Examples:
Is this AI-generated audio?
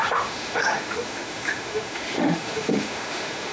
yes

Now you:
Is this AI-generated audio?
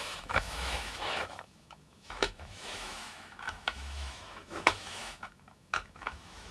yes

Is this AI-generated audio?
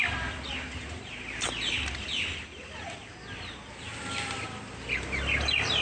no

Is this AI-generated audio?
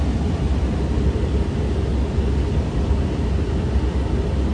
no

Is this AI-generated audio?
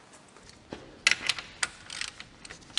no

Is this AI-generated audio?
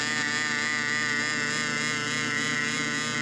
no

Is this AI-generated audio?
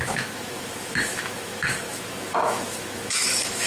yes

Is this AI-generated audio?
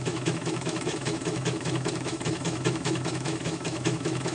yes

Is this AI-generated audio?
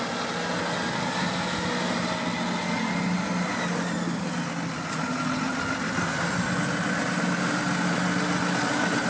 no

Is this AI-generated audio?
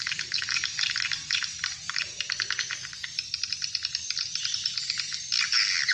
no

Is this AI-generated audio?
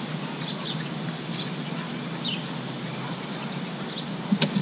no